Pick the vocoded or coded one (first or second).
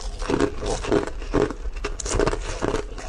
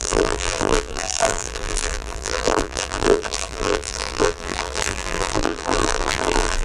second